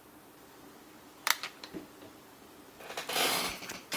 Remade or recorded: remade